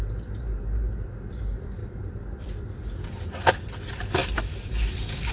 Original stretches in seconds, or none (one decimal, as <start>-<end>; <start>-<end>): 0.0-1.8; 3.6-4.2